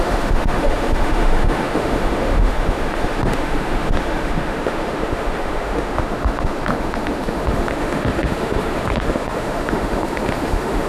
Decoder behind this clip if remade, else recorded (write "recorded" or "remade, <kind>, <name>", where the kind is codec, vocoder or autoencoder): remade, autoencoder, DAC-VAE